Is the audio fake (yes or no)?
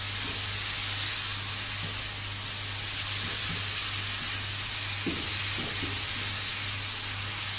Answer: no